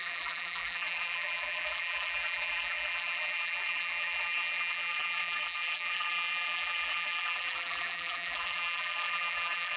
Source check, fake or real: fake